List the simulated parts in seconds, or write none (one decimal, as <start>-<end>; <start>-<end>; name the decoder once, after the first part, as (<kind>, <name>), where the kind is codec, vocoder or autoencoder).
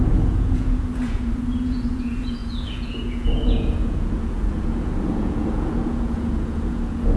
0.0-7.2 (vocoder, Vocos)